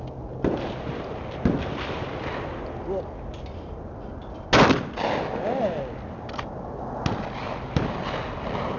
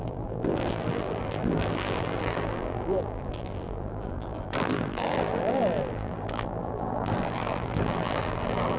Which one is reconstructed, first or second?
second